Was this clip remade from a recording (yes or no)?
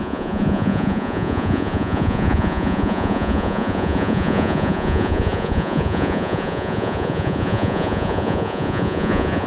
yes